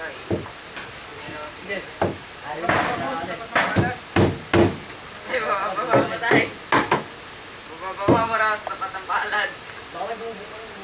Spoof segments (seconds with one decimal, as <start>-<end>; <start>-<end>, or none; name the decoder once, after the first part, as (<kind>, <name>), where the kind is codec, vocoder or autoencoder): 1.1-3.0 (vocoder, BigVGAN v2)